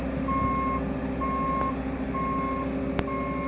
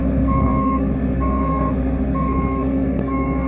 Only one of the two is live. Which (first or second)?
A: first